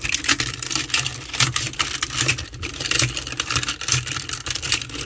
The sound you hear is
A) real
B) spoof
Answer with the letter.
B